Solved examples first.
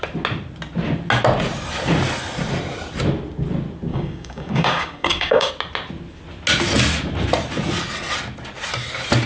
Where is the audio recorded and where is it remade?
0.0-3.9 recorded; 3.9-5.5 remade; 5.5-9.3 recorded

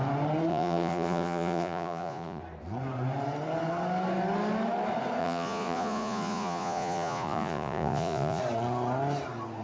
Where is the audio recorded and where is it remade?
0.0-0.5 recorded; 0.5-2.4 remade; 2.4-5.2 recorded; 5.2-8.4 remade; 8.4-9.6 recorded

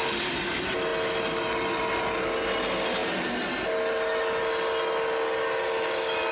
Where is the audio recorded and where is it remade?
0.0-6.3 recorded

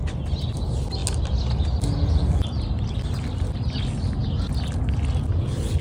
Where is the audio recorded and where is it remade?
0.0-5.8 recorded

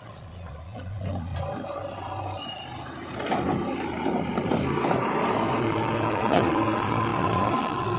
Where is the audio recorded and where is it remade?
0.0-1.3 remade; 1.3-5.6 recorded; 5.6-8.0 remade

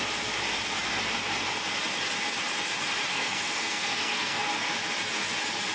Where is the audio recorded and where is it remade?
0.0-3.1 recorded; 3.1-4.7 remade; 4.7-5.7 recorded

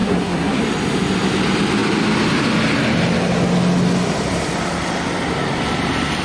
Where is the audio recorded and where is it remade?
0.0-0.6 remade; 0.6-6.2 recorded

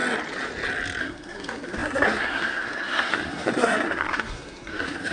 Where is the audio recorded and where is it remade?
0.0-1.0 recorded; 1.0-5.1 remade